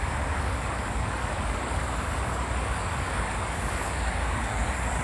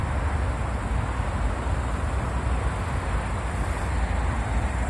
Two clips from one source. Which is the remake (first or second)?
first